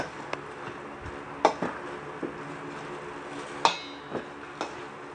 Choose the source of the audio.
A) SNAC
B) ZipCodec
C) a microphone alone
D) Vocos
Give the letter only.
C